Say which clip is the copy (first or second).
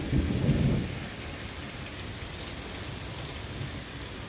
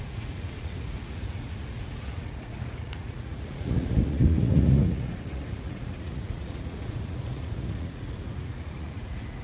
second